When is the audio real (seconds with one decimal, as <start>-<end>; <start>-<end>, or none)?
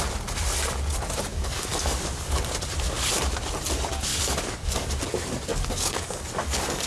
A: 0.0-1.3; 2.4-4.1; 4.9-5.5